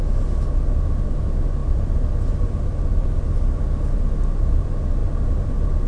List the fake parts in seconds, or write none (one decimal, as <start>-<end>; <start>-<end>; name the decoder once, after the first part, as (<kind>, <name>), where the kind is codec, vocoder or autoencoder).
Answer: none